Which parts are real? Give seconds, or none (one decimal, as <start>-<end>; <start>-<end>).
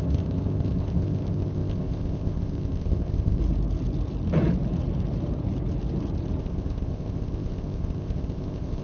3.4-6.4